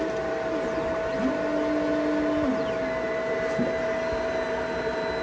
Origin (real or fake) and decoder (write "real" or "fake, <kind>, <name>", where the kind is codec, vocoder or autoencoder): real